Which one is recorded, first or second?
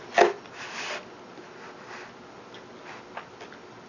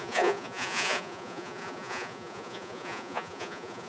first